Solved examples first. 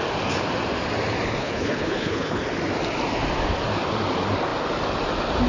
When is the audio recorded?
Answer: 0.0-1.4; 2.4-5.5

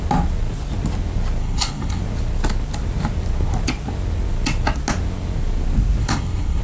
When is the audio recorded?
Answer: 0.0-1.4; 2.0-6.0

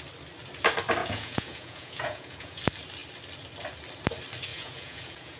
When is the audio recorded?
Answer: 0.0-1.0; 2.6-4.5

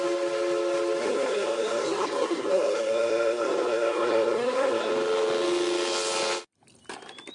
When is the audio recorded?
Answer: 0.0-1.0; 4.9-7.3